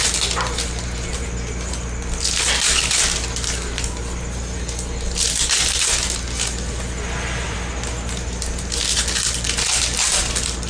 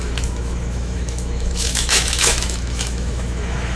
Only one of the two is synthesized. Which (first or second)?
second